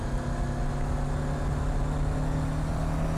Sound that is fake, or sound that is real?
real